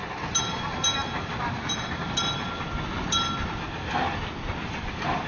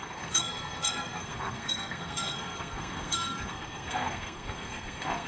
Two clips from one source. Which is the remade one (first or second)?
second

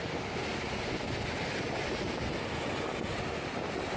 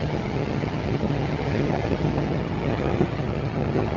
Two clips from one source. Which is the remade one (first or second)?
second